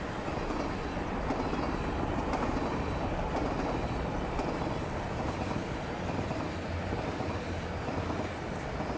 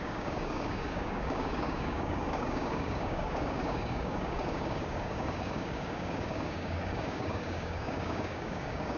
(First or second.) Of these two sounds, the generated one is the second